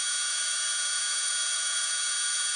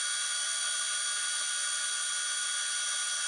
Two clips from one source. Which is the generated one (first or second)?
first